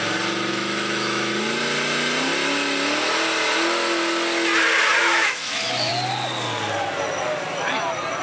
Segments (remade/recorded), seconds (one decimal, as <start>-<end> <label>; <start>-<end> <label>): 0.0-0.5 recorded; 0.5-1.3 remade; 1.3-5.0 recorded; 5.0-5.9 remade; 5.9-8.2 recorded